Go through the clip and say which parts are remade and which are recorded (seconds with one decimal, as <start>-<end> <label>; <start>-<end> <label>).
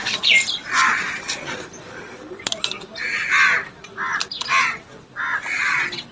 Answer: 0.0-6.1 recorded